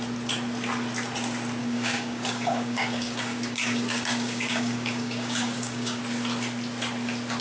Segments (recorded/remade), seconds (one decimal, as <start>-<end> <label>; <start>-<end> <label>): 0.0-1.6 recorded; 1.6-6.0 remade; 6.0-7.4 recorded